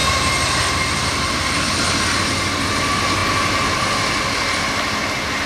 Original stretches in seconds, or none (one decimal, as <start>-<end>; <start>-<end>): 0.0-5.5